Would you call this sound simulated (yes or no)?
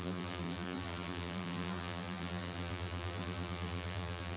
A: yes